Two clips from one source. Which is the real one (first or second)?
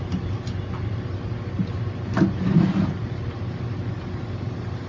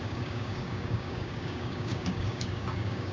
first